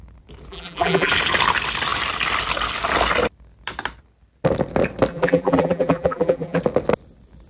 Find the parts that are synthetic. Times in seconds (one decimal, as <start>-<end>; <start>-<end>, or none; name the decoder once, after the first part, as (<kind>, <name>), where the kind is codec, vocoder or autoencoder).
0.5-1.1 (vocoder, BigVGAN v2); 5.1-6.6